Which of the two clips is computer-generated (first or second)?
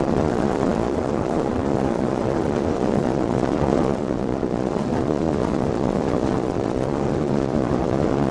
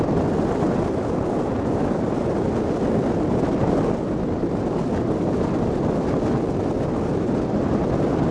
first